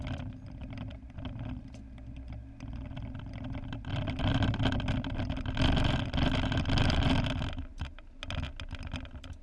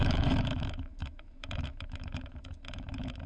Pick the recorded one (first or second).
first